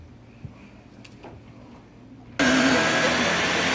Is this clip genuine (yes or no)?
yes